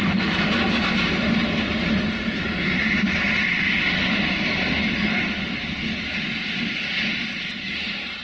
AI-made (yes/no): no